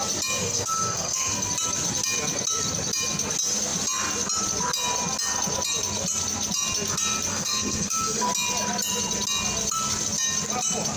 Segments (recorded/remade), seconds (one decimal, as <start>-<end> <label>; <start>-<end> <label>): 0.0-0.4 recorded; 0.4-1.5 remade; 1.5-7.3 recorded; 7.3-8.3 remade; 8.3-11.0 recorded